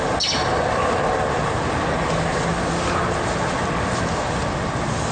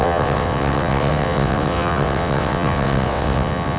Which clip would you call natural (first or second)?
first